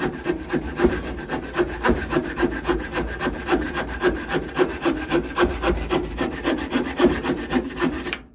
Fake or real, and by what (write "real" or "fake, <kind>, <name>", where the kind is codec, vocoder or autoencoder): fake, vocoder, BigVGAN v2